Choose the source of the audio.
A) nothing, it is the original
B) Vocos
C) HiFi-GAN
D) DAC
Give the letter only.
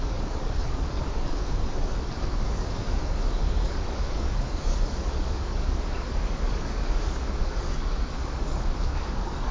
D